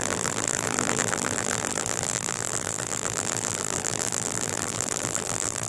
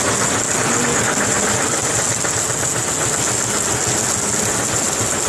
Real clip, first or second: second